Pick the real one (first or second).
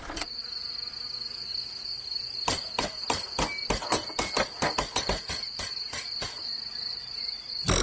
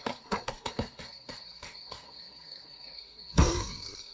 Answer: first